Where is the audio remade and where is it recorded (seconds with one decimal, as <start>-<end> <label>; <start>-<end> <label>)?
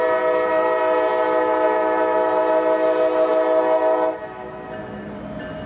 0.0-5.7 recorded